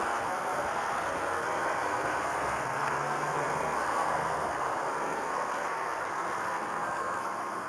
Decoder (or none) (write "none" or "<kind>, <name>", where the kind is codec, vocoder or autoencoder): codec, SNAC